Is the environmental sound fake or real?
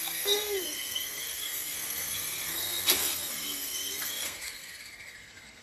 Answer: fake